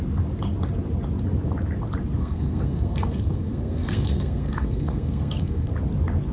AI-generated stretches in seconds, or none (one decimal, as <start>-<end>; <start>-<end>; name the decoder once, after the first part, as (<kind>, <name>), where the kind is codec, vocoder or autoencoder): 2.2-5.7 (codec, SNAC)